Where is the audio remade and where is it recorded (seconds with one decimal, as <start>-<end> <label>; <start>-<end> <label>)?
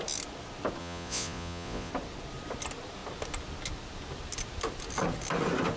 0.0-0.8 recorded; 0.8-1.9 remade; 1.9-5.8 recorded